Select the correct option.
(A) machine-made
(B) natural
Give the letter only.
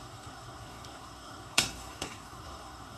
A